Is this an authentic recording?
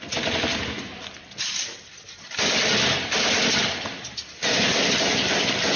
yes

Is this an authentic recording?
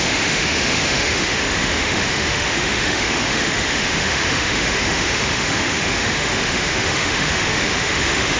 no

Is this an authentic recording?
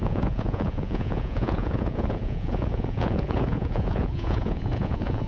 no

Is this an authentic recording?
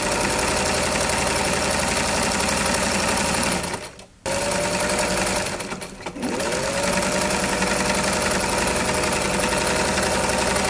yes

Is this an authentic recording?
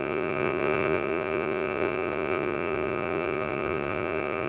no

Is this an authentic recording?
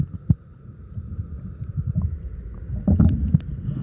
yes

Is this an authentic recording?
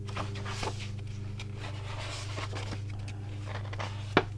yes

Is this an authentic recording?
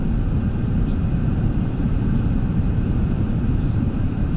no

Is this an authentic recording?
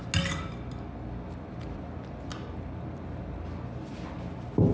yes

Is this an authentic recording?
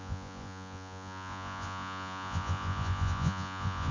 no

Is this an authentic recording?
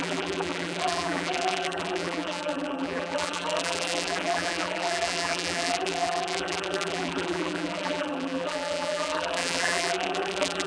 no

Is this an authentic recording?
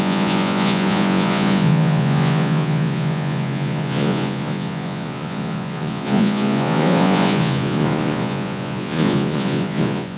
no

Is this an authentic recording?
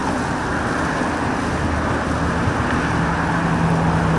yes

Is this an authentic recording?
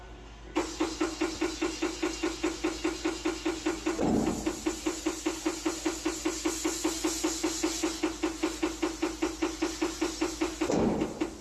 yes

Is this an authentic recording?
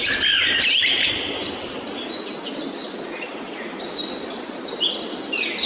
yes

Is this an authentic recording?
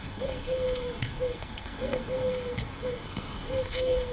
no